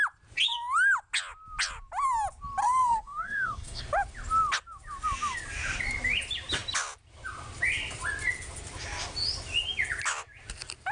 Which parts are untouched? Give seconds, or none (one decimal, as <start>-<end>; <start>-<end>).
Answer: 0.0-2.6; 3.8-10.9